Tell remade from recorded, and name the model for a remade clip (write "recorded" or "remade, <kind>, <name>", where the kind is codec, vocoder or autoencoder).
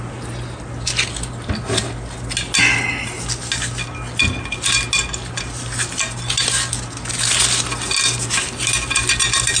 recorded